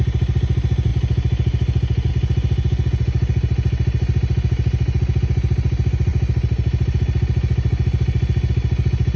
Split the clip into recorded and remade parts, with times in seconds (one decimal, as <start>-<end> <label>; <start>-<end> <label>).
0.0-9.2 recorded